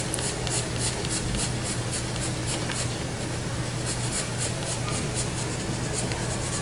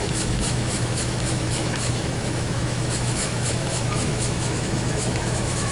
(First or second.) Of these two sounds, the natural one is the first